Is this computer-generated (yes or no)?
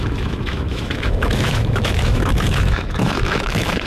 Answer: yes